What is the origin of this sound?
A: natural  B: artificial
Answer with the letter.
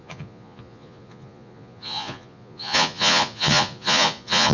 B